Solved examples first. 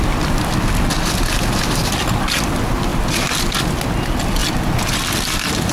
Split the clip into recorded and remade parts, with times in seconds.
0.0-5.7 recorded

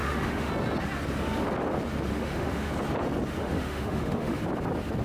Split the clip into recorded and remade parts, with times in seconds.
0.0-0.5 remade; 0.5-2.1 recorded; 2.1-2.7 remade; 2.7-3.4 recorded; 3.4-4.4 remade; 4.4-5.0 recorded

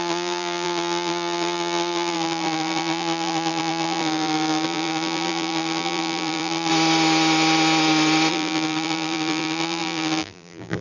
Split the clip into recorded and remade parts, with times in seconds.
0.0-6.7 remade; 6.7-8.3 recorded; 8.3-10.8 remade